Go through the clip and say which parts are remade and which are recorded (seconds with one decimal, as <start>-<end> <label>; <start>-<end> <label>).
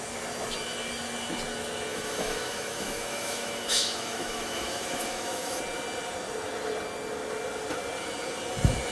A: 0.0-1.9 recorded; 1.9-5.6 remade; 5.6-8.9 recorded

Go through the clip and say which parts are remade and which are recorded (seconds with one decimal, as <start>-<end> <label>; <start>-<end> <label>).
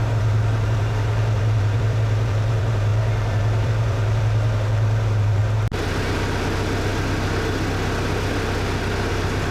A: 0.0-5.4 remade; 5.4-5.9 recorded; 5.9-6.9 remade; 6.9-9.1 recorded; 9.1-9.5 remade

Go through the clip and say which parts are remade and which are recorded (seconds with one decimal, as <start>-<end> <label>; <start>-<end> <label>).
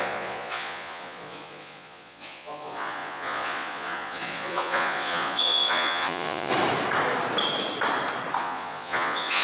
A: 0.0-6.5 remade; 6.5-8.4 recorded; 8.4-9.4 remade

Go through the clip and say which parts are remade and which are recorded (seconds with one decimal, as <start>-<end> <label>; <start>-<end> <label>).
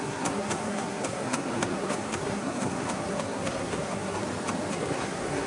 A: 0.0-4.2 remade; 4.2-4.7 recorded; 4.7-5.5 remade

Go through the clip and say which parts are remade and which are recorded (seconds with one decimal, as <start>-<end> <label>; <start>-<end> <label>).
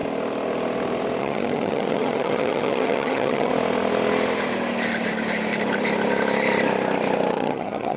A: 0.0-1.2 recorded; 1.2-3.5 remade; 3.5-7.3 recorded; 7.3-8.0 remade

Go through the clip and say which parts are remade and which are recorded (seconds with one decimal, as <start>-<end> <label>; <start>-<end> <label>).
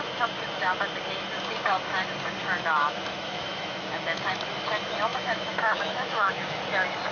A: 0.0-2.6 recorded; 2.6-4.3 remade; 4.3-5.1 recorded; 5.1-6.6 remade; 6.6-7.1 recorded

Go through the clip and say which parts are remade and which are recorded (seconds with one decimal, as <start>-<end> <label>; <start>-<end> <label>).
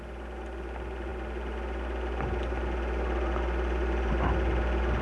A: 0.0-5.0 recorded